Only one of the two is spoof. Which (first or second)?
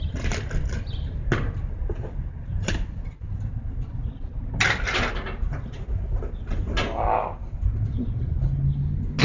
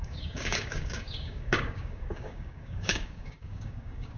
second